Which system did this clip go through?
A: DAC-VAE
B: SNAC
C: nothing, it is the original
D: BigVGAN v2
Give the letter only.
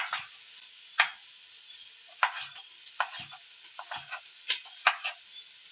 C